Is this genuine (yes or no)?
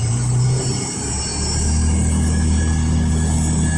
yes